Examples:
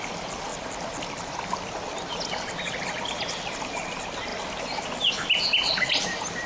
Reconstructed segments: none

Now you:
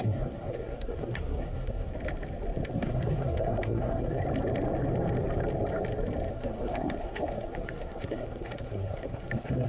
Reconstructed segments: 0.0-1.9 (codec, SNAC); 2.7-4.2; 6.3-9.7